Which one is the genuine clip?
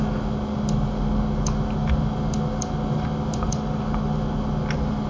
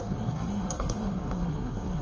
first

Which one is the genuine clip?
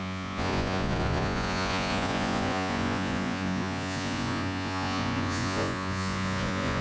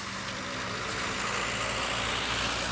second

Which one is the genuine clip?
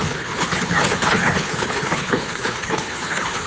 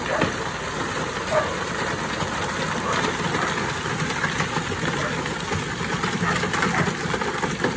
second